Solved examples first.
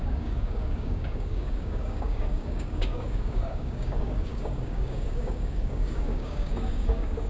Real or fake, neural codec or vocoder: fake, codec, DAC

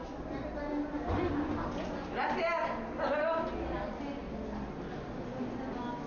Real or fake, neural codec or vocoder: real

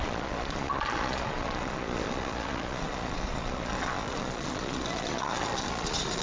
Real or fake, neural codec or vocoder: fake, vocoder, Vocos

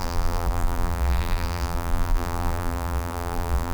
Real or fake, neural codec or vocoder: fake, vocoder, BigVGAN v2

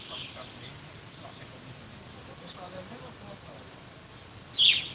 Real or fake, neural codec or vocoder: real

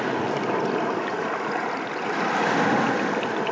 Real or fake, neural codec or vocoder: real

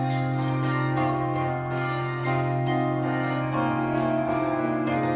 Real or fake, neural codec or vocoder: fake, codec, SNAC